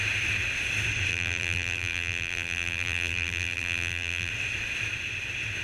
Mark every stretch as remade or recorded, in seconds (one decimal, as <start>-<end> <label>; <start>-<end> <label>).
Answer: 0.0-1.1 recorded; 1.1-4.3 remade; 4.3-5.6 recorded